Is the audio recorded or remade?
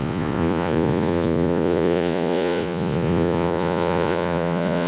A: remade